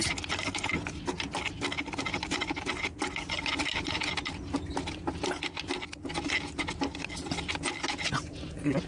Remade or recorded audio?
recorded